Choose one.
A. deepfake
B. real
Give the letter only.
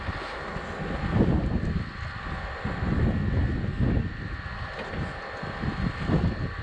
B